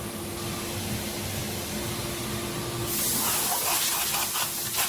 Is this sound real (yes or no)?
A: yes